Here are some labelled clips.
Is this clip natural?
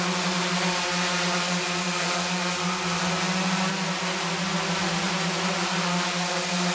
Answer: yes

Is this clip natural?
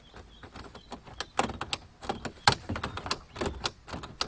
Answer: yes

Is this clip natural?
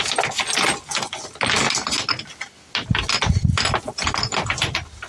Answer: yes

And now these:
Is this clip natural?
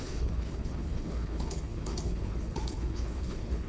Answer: no